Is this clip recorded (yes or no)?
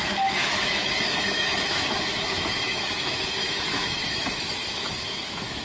no